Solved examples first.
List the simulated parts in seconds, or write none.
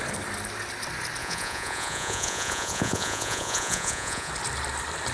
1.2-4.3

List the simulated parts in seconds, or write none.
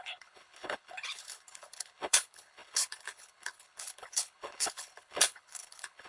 0.0-6.1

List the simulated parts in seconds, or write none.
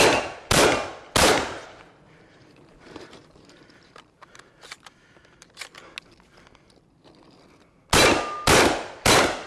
1.3-4.5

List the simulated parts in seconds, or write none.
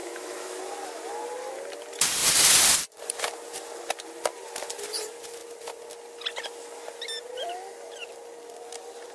0.0-0.6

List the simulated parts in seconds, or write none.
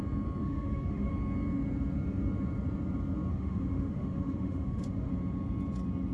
0.4-1.1; 3.3-5.1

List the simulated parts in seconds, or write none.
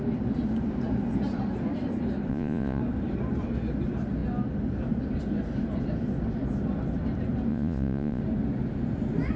2.3-2.8; 7.5-8.2